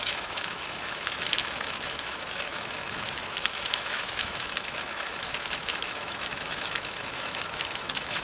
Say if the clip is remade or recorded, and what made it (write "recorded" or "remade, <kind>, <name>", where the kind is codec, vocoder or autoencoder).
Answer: remade, autoencoder, DAC-VAE